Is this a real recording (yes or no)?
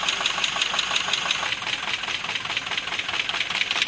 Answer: yes